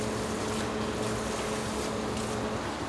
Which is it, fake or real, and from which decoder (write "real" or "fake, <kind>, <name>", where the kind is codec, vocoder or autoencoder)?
real